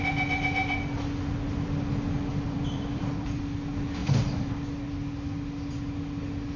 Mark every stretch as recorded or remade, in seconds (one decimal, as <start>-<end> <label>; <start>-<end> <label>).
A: 0.0-2.3 recorded; 2.3-3.4 remade; 3.4-4.0 recorded; 4.0-4.5 remade; 4.5-6.6 recorded